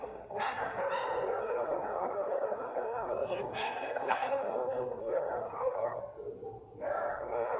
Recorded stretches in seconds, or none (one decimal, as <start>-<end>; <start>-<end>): 0.8-1.4; 6.0-7.1